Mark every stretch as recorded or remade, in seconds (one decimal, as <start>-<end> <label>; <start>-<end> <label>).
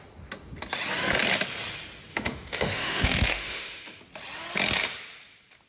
0.0-2.1 recorded; 2.1-4.0 remade; 4.0-5.7 recorded